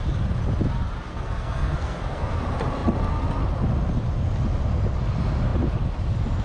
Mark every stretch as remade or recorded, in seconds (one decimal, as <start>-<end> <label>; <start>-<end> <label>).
0.0-1.1 recorded; 1.1-2.4 remade; 2.4-6.4 recorded